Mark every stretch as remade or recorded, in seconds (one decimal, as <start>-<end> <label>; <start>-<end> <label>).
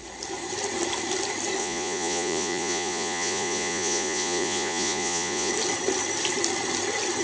0.0-1.6 recorded; 1.6-5.5 remade; 5.5-7.2 recorded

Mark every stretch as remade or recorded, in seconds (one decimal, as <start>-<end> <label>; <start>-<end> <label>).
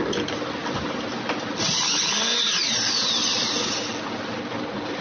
0.0-5.0 recorded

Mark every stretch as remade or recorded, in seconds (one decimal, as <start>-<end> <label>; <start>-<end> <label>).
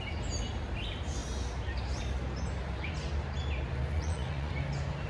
0.0-3.9 recorded; 3.9-4.5 remade; 4.5-5.1 recorded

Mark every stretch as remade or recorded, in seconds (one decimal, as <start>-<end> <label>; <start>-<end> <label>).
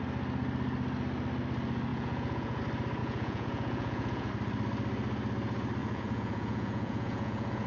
0.0-1.9 recorded; 1.9-2.6 remade; 2.6-3.0 recorded; 3.0-4.3 remade; 4.3-5.8 recorded; 5.8-7.7 remade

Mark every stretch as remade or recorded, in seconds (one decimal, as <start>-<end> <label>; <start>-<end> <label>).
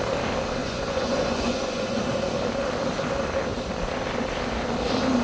0.0-0.6 recorded; 0.6-2.0 remade; 2.0-5.2 recorded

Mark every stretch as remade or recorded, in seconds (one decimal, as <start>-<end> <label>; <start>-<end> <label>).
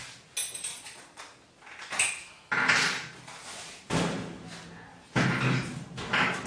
0.0-0.7 recorded; 0.7-1.2 remade; 1.2-6.5 recorded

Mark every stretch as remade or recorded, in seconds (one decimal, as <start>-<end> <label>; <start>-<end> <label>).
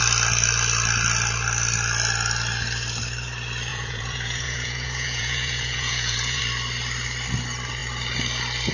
0.0-3.7 recorded; 3.7-6.4 remade; 6.4-8.7 recorded